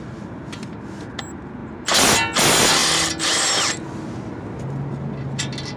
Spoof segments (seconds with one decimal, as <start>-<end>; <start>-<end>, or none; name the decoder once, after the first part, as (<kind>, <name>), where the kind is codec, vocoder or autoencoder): none